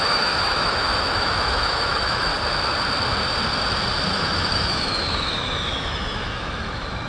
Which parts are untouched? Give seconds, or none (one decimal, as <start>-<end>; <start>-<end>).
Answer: 2.3-4.1